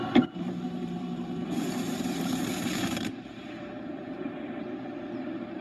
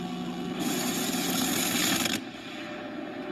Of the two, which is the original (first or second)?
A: second